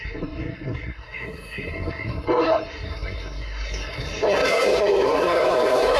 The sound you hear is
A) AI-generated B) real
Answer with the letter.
A